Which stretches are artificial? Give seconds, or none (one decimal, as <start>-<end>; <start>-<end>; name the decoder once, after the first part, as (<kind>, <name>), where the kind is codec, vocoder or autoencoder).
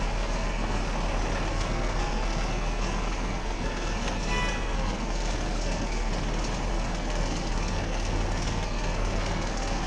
0.0-0.8 (codec, SNAC); 1.5-6.1; 6.7-9.9